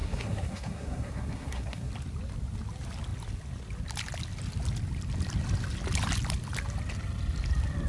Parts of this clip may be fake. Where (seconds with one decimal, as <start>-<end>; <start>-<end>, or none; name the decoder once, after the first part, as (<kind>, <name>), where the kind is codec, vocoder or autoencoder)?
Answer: 0.0-1.9 (codec, SNAC)